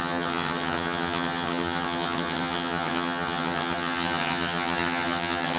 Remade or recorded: remade